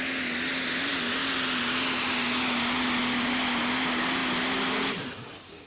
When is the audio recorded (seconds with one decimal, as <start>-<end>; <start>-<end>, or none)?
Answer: 0.0-5.7